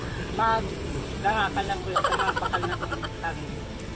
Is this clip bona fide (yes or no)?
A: no